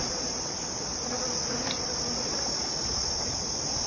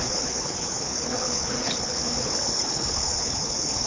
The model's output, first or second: second